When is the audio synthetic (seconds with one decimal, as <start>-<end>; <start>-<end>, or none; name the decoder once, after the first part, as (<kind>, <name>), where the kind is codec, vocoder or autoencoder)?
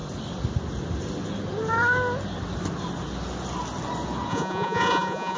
4.3-5.4 (vocoder, Vocos)